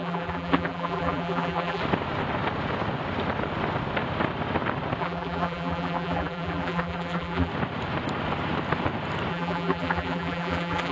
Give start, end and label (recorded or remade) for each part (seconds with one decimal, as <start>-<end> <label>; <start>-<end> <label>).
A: 0.0-1.8 remade; 1.8-5.0 recorded; 5.0-7.5 remade; 7.5-9.3 recorded; 9.3-10.9 remade